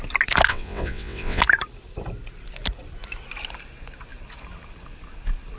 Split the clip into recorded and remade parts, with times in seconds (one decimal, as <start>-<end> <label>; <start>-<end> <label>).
0.0-0.5 recorded; 0.5-1.4 remade; 1.4-5.6 recorded